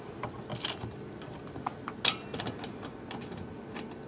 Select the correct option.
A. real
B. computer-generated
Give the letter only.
A